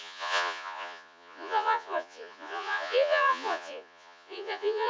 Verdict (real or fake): fake